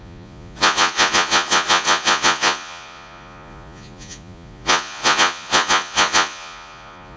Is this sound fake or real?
fake